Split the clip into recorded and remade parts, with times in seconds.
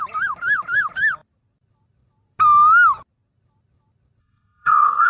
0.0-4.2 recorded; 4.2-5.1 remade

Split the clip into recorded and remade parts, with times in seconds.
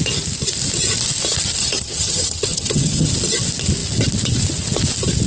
0.0-1.6 recorded; 1.6-3.1 remade; 3.1-5.3 recorded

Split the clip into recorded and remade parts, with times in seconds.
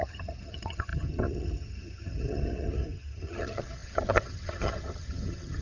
0.0-5.6 remade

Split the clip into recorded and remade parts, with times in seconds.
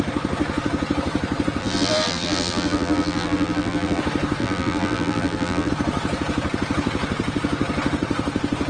0.0-1.6 recorded; 1.6-4.0 remade; 4.0-4.4 recorded; 4.4-5.7 remade; 5.7-8.7 recorded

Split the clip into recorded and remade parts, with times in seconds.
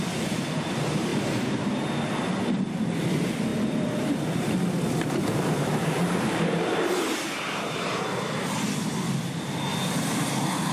0.0-3.5 recorded; 3.5-7.9 remade; 7.9-10.7 recorded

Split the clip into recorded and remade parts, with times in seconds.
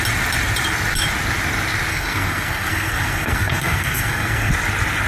0.0-1.9 recorded; 1.9-4.5 remade; 4.5-5.1 recorded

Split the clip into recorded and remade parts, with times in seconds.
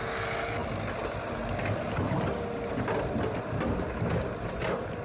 0.0-5.0 recorded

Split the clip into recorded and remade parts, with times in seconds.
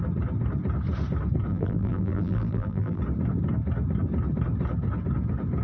0.0-1.5 recorded; 1.5-3.0 remade; 3.0-5.6 recorded